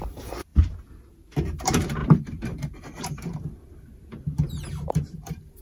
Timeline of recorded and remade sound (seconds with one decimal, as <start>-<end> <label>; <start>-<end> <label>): 0.0-0.5 remade; 0.5-1.6 recorded; 1.6-5.6 remade

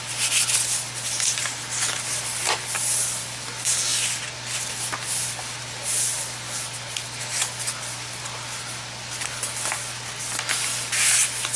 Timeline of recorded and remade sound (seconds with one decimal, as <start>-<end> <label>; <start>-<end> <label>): 0.0-11.6 recorded

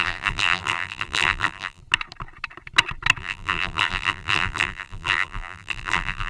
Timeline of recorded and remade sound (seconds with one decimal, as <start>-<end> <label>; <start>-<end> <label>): 0.0-1.8 remade; 1.8-3.2 recorded; 3.2-6.3 remade